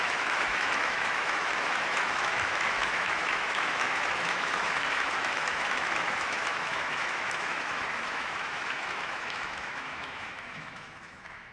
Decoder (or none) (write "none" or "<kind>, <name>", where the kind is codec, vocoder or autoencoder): autoencoder, DAC-VAE